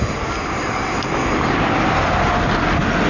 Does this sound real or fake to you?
real